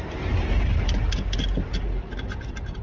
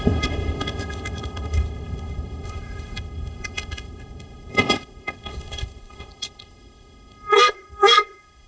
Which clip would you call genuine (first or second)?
first